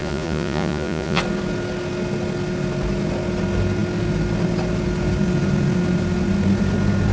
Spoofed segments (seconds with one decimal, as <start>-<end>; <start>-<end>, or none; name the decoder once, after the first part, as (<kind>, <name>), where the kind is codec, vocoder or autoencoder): 0.0-1.2 (vocoder, Vocos)